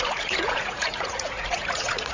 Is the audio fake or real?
fake